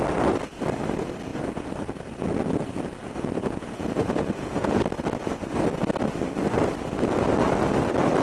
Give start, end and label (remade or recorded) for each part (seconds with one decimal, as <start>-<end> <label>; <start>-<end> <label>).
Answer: 0.0-3.0 recorded; 3.0-4.8 remade; 4.8-8.2 recorded